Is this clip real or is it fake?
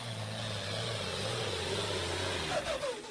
real